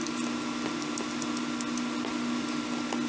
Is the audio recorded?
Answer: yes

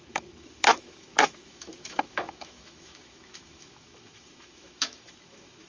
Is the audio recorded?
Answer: no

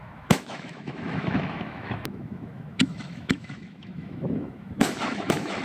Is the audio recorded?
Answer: no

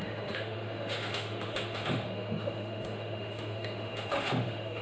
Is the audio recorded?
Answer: no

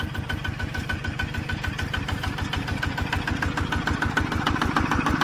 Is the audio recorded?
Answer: yes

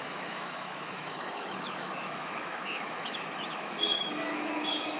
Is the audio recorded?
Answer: no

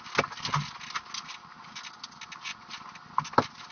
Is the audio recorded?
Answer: yes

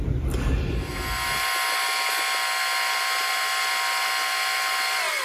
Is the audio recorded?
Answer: yes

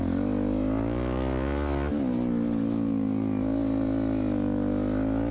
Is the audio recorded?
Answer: yes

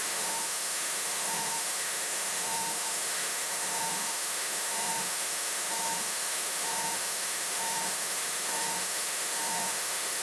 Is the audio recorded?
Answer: no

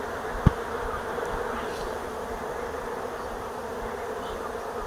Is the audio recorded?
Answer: yes